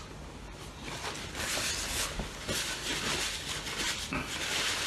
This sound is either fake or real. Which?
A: real